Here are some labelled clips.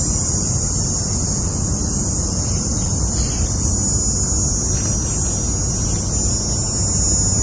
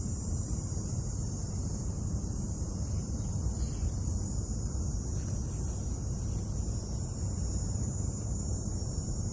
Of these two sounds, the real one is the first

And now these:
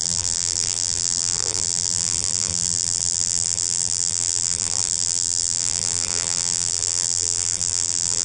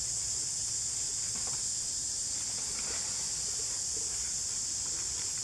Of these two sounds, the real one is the second